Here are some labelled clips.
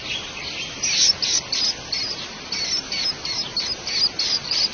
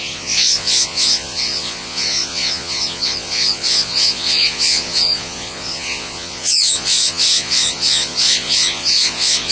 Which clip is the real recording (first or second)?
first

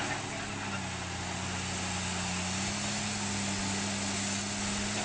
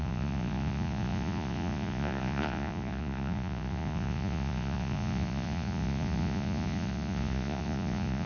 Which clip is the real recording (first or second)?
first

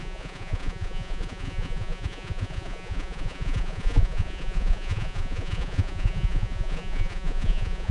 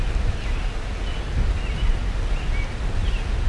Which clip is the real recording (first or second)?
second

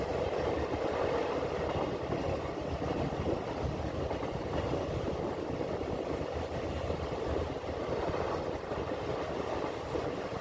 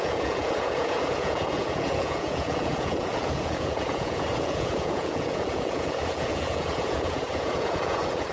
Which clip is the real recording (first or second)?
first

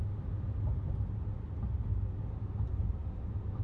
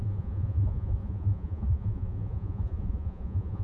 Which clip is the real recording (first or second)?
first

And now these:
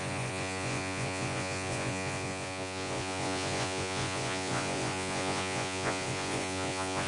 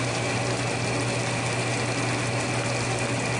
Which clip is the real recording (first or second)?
second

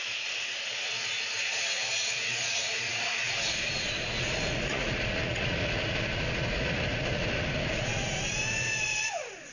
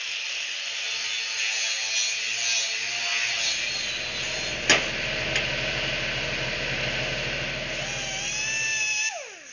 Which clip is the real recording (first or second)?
second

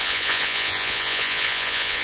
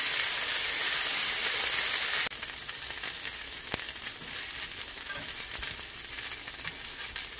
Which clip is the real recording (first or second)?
second